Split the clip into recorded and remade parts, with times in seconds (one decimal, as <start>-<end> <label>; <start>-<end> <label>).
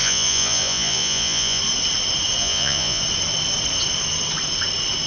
0.0-1.6 remade; 1.6-2.4 recorded; 2.4-3.0 remade; 3.0-5.1 recorded